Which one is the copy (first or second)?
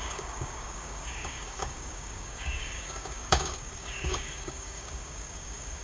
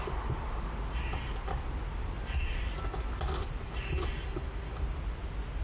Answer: first